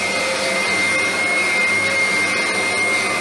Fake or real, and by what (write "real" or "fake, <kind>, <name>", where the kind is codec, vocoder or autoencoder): real